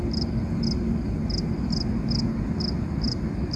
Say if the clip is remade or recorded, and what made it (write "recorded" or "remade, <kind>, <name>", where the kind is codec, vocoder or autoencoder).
recorded